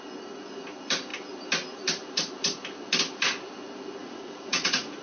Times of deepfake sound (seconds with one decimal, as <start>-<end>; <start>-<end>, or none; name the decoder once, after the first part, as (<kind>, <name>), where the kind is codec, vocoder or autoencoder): 4.0-5.0 (vocoder, Vocos)